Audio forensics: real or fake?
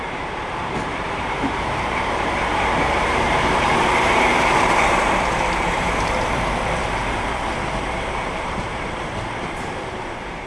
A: fake